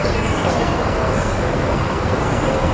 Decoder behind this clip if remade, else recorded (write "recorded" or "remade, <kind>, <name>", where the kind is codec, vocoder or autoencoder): remade, codec, SNAC